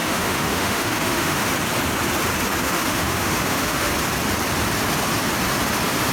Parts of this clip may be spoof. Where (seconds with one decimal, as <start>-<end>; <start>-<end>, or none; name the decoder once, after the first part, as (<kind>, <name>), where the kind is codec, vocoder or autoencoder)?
0.0-1.5 (autoencoder, DAC-VAE); 2.6-3.9